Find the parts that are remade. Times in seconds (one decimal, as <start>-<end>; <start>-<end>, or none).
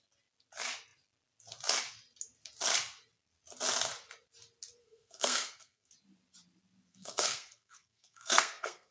4.8-5.9; 6.9-8.9